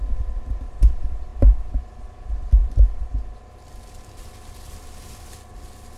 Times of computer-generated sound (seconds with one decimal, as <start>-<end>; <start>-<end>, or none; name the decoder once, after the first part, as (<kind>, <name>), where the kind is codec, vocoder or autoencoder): none